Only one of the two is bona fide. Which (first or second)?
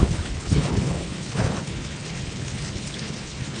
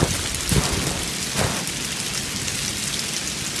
second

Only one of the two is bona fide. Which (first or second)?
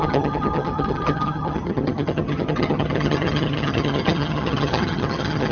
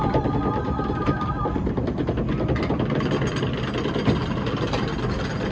second